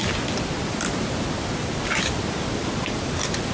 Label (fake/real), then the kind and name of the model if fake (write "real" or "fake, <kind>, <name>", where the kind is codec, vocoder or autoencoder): real